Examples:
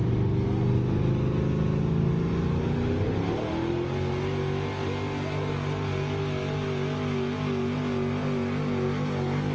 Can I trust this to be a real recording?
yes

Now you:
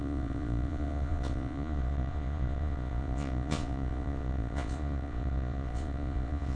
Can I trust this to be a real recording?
no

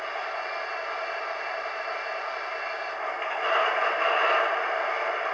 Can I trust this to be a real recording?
yes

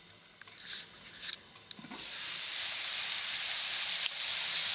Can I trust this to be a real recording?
yes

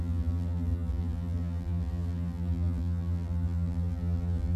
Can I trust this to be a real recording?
no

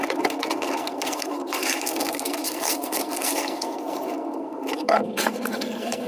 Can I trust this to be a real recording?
no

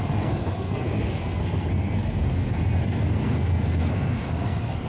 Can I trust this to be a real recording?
no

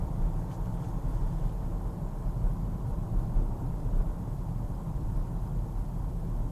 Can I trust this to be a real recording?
yes